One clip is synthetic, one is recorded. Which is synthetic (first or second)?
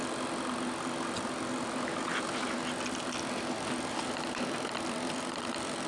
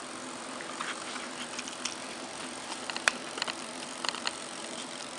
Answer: second